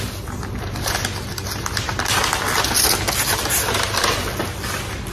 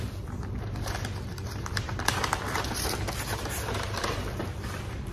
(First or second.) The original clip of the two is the first